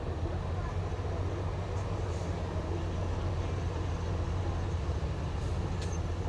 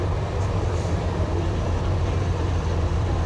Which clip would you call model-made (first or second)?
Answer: second